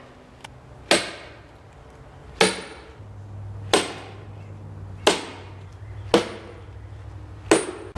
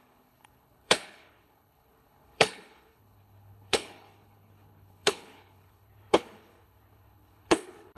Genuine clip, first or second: first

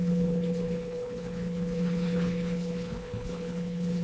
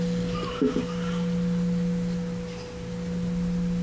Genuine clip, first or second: second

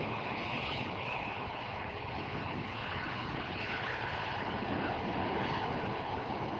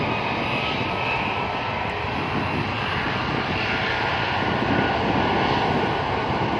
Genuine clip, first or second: second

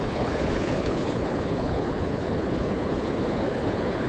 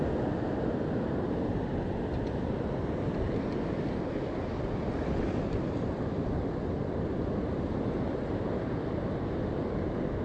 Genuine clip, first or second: second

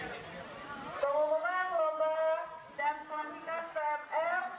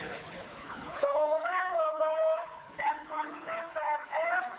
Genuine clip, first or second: first